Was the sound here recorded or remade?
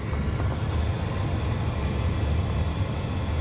recorded